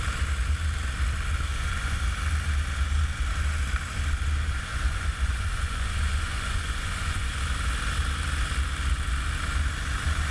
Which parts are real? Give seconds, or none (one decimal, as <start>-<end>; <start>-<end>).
0.0-1.5; 2.0-4.7; 7.4-10.3